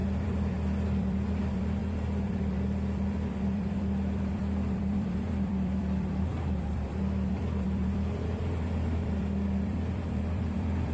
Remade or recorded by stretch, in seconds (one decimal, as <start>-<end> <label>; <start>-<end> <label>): 0.0-10.9 remade